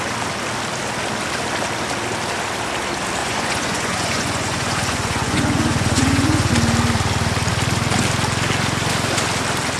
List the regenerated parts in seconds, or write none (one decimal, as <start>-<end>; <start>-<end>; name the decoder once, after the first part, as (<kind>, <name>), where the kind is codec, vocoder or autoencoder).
3.2-6.5 (vocoder, Vocos)